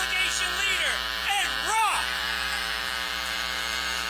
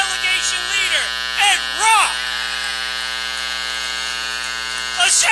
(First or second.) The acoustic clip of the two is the second